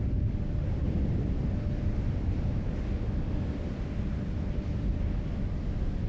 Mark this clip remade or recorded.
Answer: recorded